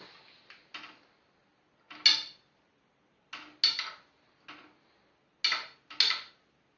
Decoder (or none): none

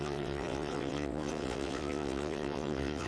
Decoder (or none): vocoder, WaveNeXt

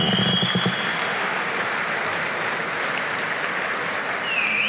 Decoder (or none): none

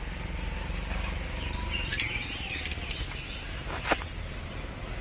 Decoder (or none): none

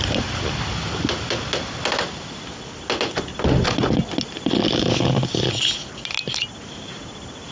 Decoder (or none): none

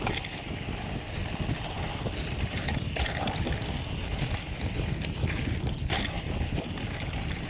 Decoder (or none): none